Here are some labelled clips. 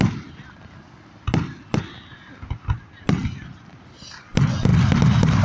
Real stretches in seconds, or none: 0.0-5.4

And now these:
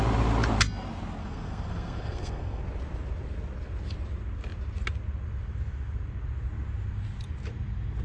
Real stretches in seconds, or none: 0.0-1.2; 2.6-8.0

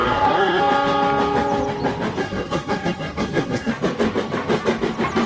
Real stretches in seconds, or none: 0.6-2.2; 3.7-5.3

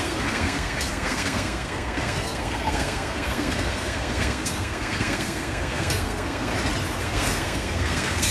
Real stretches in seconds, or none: 6.5-7.0